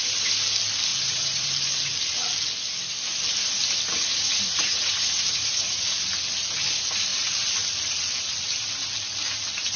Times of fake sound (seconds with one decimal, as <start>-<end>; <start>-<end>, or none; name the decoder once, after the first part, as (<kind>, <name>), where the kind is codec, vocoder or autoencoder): 0.9-1.5 (vocoder, Vocos); 4.1-6.0